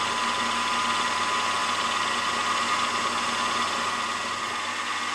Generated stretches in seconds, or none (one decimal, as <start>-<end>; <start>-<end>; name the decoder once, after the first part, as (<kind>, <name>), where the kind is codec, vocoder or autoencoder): none